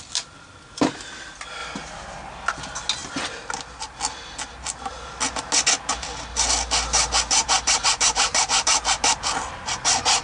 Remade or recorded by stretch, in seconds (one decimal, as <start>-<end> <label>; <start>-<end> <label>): 0.0-7.4 recorded; 7.4-8.9 remade; 8.9-10.2 recorded